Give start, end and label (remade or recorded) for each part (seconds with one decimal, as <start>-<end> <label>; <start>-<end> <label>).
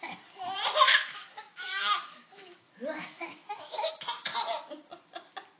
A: 0.0-0.9 recorded; 0.9-3.9 remade; 3.9-5.6 recorded